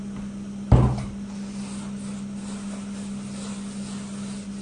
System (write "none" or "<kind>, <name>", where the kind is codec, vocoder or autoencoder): none